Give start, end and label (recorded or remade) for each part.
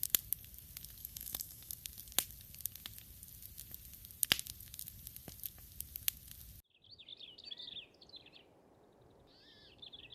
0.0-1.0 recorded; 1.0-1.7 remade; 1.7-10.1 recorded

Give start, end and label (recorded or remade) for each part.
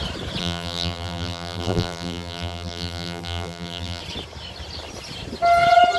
0.0-0.4 recorded; 0.4-4.0 remade; 4.0-6.0 recorded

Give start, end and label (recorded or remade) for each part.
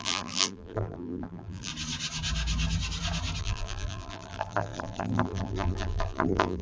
0.0-1.7 remade; 1.7-3.4 recorded; 3.4-6.6 remade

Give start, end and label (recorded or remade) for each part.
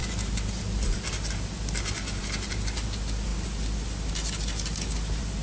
0.0-5.4 recorded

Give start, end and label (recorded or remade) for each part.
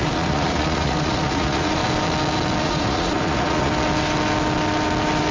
0.0-1.8 remade; 1.8-2.6 recorded; 2.6-3.7 remade; 3.7-5.3 recorded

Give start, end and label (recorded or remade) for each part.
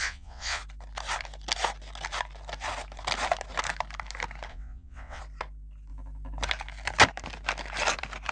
0.0-0.6 remade; 0.6-4.5 recorded; 4.5-5.2 remade; 5.2-8.3 recorded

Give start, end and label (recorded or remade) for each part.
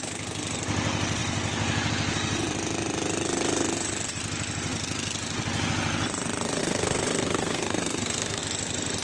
0.0-6.6 recorded; 6.6-8.4 remade; 8.4-9.0 recorded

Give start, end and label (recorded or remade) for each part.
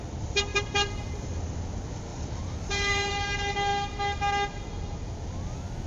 0.0-0.5 recorded; 0.5-1.3 remade; 1.3-2.1 recorded; 2.1-3.1 remade; 3.1-5.9 recorded